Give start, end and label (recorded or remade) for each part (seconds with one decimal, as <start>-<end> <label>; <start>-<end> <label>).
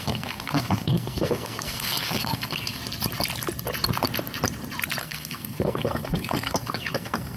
0.0-2.8 remade; 2.8-5.0 recorded; 5.0-7.4 remade